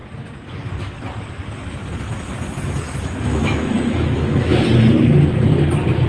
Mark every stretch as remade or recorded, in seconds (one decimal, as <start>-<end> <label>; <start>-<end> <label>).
0.0-3.0 recorded; 3.0-4.5 remade; 4.5-6.1 recorded